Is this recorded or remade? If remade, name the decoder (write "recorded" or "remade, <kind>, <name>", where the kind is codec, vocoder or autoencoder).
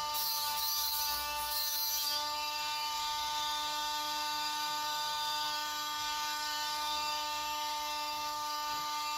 remade, codec, DAC